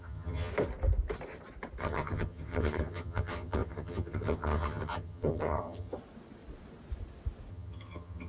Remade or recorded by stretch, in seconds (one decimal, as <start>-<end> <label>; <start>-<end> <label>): 0.0-0.5 remade; 0.5-1.8 recorded; 1.8-5.9 remade; 5.9-7.5 recorded; 7.5-8.3 remade